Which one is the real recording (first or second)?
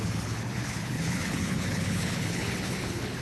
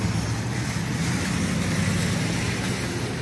second